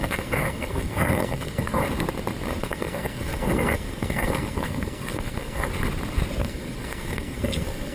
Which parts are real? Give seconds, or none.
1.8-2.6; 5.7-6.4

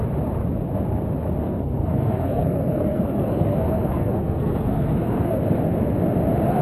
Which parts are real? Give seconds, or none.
0.0-1.4; 5.4-6.6

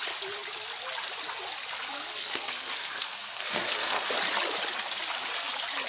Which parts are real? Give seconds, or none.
0.0-2.2; 4.1-5.9